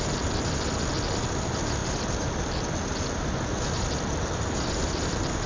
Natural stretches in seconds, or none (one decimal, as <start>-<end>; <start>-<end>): 0.0-5.5